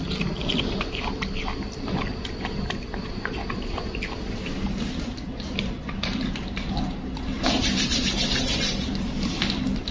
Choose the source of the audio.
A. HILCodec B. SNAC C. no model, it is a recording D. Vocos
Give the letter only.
C